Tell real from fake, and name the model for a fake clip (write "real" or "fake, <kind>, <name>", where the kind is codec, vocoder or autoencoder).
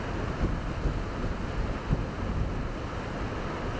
real